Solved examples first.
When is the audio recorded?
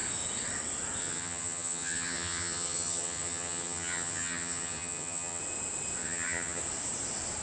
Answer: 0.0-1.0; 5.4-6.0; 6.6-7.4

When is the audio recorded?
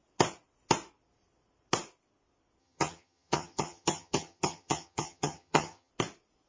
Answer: 0.0-2.6; 5.9-6.5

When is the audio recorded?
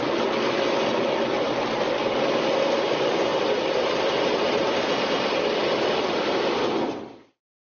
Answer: 0.0-7.7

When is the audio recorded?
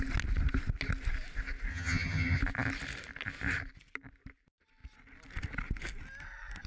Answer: 0.0-1.7; 2.4-6.7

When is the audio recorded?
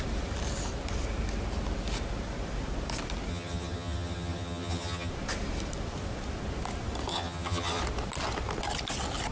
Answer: 0.0-3.3; 5.1-7.1; 7.8-9.3